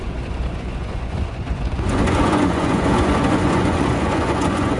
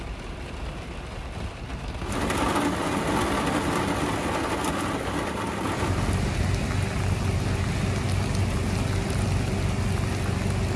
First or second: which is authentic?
second